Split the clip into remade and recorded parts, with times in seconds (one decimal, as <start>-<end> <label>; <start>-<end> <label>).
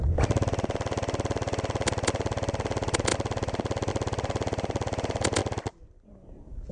0.0-6.7 recorded